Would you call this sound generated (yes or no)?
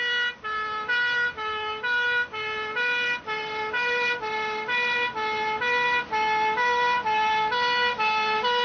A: no